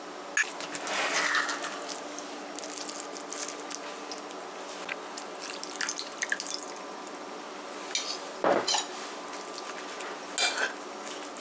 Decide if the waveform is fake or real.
real